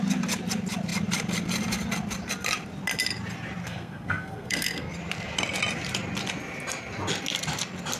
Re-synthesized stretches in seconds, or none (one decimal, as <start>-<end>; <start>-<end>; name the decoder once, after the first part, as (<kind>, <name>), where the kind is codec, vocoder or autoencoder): 3.6-4.9 (codec, SNAC)

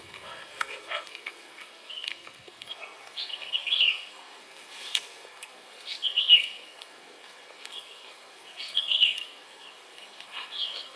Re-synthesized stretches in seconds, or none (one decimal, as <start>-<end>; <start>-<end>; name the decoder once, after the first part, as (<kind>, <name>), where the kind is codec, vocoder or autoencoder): 0.0-11.0 (codec, SNAC)

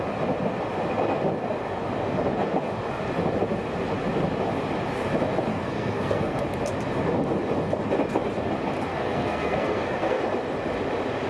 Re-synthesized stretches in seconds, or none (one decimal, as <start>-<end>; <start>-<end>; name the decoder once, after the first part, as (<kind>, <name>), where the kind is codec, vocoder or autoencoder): 5.5-6.4 (codec, SNAC); 8.9-10.2

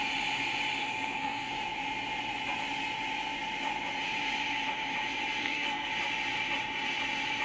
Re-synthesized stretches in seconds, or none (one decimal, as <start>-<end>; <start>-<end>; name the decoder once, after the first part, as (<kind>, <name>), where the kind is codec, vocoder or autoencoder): 0.8-1.5 (codec, SNAC); 5.4-5.9

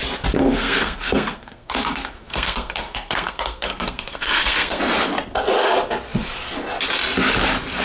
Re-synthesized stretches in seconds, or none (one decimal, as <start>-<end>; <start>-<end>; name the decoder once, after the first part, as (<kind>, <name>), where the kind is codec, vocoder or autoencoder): 0.4-4.8 (codec, SNAC)